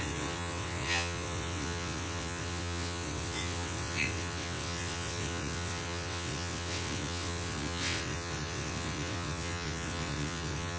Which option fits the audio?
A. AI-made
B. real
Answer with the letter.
A